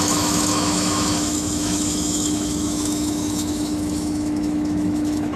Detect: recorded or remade remade